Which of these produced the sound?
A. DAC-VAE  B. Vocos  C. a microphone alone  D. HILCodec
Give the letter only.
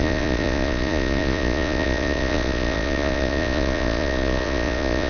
B